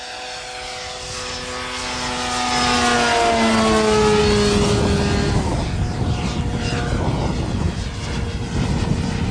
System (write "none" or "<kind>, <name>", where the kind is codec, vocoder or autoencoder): none